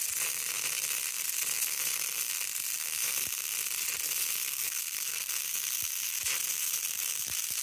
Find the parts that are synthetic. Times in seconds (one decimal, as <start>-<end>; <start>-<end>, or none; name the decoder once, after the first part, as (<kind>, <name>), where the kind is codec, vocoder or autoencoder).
4.5-5.3 (codec, SNAC)